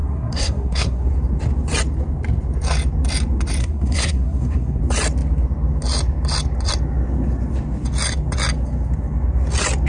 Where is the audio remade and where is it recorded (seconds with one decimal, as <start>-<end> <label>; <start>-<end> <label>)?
0.0-1.1 remade; 1.1-3.6 recorded; 3.6-4.8 remade; 4.8-9.9 recorded